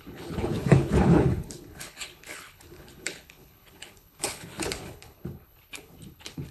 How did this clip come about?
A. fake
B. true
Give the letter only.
A